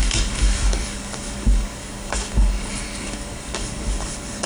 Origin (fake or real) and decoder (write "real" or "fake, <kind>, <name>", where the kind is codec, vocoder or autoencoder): fake, codec, DAC